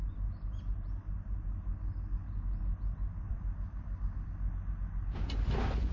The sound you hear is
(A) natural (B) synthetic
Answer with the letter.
A